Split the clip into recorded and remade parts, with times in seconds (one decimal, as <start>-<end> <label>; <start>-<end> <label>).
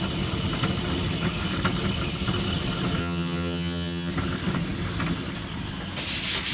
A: 0.0-3.0 recorded; 3.0-4.1 remade; 4.1-6.5 recorded